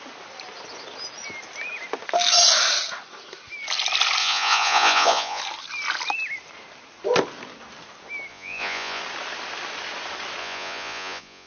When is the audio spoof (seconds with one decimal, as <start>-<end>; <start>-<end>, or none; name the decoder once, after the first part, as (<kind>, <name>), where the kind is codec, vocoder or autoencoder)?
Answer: 4.2-5.4 (vocoder, Vocos); 8.3-9.0; 10.4-11.5